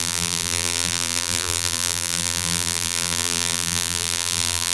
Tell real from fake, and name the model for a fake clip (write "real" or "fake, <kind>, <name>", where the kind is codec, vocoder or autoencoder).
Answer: fake, vocoder, BigVGAN v2